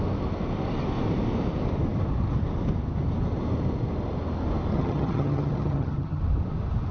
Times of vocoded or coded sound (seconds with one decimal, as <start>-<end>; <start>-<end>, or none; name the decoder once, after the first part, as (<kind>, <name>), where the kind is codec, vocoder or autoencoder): 4.7-6.2 (vocoder, HiFi-GAN)